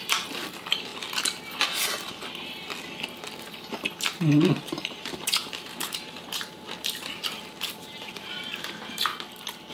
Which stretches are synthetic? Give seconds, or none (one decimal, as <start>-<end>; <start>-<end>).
0.0-0.9; 4.0-9.1

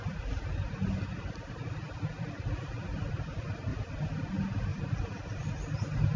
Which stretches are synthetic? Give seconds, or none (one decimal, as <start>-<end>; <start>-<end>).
1.1-2.3; 3.7-4.3; 4.7-5.5

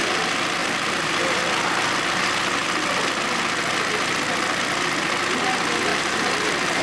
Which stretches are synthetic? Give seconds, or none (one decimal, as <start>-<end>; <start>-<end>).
0.6-1.4; 5.9-6.8

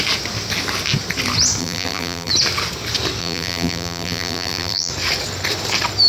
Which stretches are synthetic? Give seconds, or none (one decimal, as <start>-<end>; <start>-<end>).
1.6-2.3; 3.2-4.9

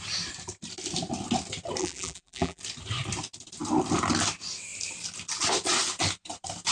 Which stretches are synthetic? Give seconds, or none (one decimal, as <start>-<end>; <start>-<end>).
1.8-2.6